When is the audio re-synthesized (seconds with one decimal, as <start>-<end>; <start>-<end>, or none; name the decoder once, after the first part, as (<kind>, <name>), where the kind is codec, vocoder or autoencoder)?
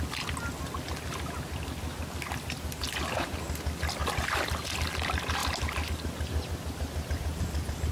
none